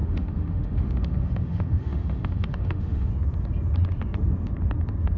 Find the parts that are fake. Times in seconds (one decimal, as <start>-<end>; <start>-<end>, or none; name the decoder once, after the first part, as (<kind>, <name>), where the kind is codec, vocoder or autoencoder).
0.0-3.1 (autoencoder, DAC-VAE)